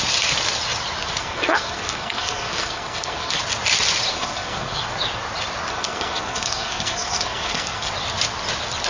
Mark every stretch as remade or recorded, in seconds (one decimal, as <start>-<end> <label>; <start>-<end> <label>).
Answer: 0.0-1.2 recorded; 1.2-3.4 remade; 3.4-4.1 recorded; 4.1-4.8 remade; 4.8-5.7 recorded; 5.7-7.9 remade; 7.9-8.9 recorded